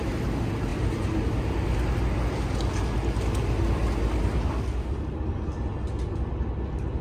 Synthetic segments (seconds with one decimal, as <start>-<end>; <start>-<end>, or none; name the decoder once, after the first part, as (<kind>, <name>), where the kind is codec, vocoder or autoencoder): none